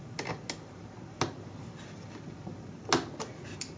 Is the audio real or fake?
real